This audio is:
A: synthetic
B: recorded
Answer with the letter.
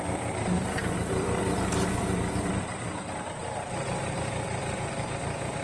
B